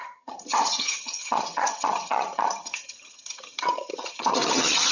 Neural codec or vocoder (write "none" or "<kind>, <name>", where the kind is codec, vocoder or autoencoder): vocoder, HiFi-GAN